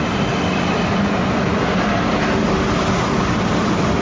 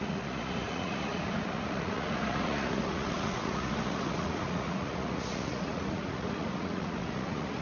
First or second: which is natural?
first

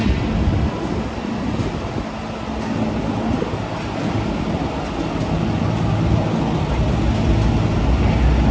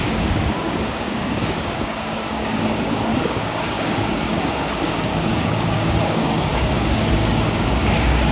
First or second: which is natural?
first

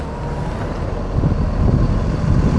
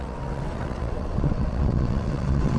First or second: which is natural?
first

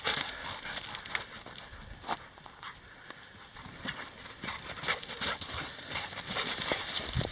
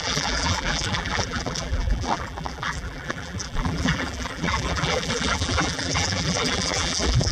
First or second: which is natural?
first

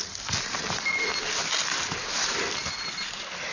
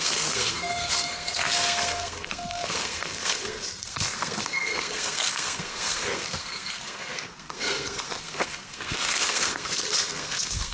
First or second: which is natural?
first